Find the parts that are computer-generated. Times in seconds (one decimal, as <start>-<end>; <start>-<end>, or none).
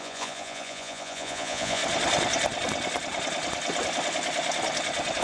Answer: 0.0-1.8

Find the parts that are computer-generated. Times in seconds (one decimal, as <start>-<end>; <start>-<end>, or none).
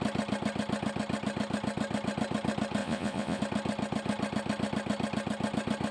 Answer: 2.8-3.4